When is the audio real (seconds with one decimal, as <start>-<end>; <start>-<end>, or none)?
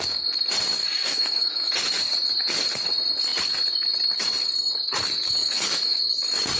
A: 0.0-0.8; 1.7-5.4; 6.0-6.6